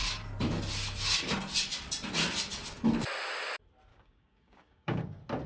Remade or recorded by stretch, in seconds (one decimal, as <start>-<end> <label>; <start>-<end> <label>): 0.0-3.9 recorded; 3.9-5.0 remade; 5.0-5.5 recorded